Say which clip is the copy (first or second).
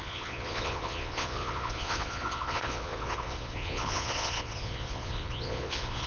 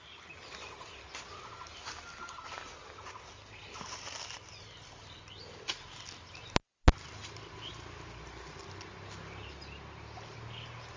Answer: first